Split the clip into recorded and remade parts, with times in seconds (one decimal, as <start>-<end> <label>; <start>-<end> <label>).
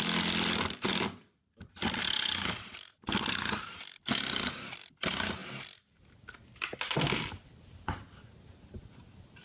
0.0-9.4 recorded